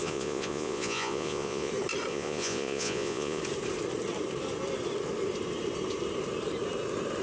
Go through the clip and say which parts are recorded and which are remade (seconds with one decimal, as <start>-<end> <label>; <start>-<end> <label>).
0.0-1.7 remade; 1.7-2.1 recorded; 2.1-3.4 remade; 3.4-7.2 recorded